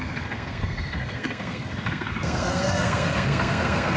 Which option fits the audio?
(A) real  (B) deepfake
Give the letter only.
B